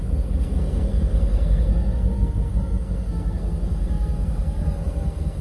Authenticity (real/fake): fake